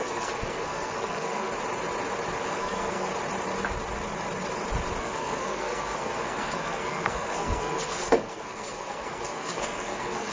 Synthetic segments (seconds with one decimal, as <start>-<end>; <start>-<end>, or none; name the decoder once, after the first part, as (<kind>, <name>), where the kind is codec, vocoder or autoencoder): 0.0-1.5 (codec, SNAC); 2.5-3.1; 5.0-10.3